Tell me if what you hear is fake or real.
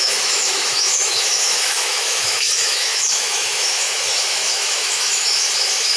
fake